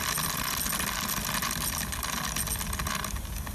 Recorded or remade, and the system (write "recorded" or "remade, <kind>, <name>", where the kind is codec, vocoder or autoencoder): recorded